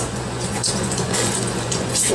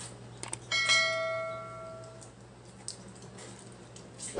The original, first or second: second